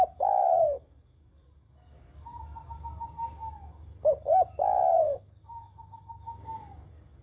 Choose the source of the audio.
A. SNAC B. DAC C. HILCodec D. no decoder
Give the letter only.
B